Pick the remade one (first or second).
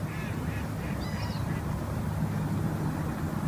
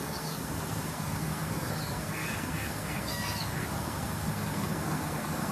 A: second